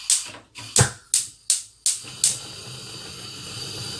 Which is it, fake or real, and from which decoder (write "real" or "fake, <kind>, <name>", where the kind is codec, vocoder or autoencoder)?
real